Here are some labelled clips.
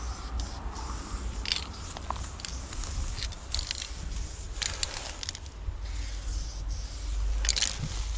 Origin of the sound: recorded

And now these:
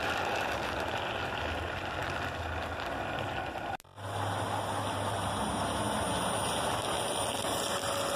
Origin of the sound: recorded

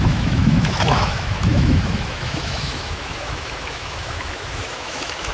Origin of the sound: remade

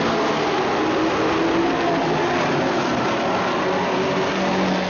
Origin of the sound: recorded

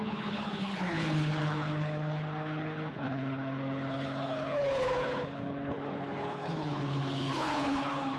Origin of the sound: remade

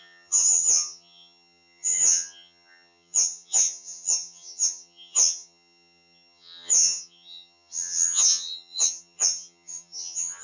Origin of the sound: remade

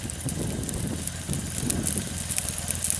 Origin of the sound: recorded